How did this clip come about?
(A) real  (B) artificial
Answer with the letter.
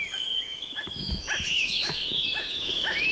B